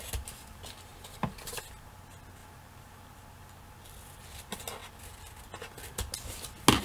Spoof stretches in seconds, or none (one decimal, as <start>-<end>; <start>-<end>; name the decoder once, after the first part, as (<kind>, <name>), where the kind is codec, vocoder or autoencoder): none